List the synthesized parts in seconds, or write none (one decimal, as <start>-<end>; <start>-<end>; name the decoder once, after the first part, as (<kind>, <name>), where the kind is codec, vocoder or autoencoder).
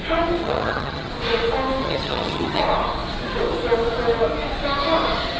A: 0.4-1.1 (vocoder, HiFi-GAN); 1.8-2.6